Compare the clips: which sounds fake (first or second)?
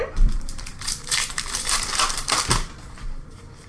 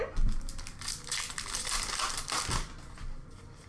first